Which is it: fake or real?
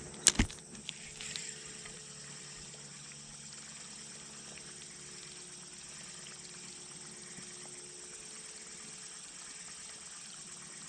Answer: real